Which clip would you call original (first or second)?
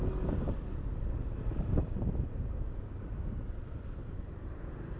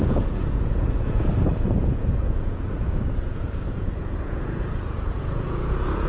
first